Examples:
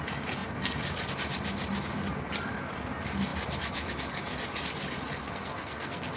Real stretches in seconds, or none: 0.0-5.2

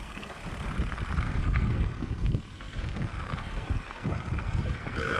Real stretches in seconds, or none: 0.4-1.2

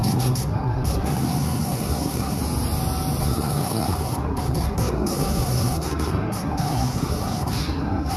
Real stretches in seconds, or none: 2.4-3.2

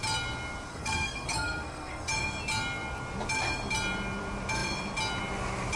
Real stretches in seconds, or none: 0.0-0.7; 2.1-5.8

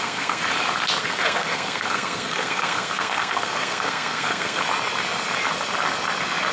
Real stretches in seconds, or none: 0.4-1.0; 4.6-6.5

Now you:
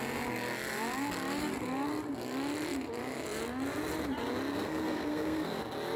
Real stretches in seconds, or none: 0.0-4.5; 5.6-6.0

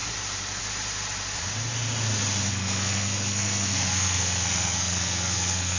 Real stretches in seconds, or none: 0.0-2.5

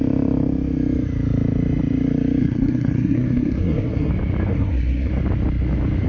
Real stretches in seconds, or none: 0.0-2.4; 4.1-4.5; 5.1-6.1